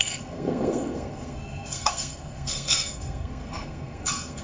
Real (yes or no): no